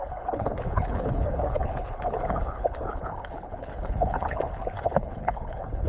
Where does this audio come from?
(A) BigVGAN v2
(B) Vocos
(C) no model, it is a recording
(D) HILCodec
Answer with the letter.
D